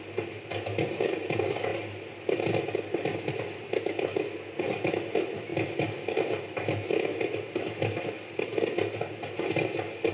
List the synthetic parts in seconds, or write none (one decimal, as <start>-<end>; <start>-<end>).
none